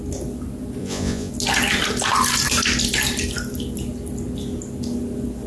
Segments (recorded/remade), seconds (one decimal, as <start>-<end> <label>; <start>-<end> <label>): 0.0-0.8 recorded; 0.8-1.3 remade; 1.3-5.5 recorded